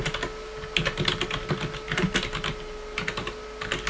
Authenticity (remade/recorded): recorded